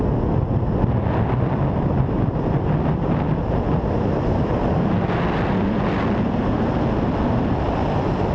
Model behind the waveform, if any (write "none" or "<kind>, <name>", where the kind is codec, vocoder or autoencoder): none